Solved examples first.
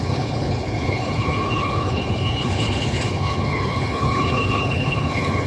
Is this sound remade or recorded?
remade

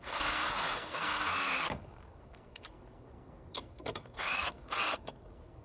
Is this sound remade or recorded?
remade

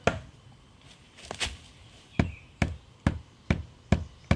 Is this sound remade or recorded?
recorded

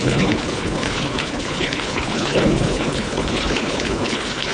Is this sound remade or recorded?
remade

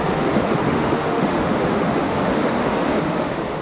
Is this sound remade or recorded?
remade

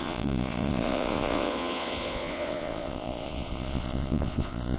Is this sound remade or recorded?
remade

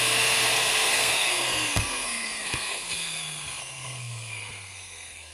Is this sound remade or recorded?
remade